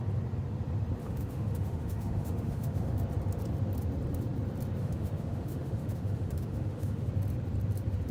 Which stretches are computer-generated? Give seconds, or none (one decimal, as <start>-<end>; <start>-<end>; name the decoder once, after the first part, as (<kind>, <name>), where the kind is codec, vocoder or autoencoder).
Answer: 1.0-3.0 (autoencoder, DAC-VAE); 4.8-7.1